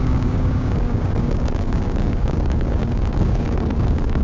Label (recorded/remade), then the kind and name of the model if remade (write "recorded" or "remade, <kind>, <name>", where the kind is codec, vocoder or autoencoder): remade, codec, DAC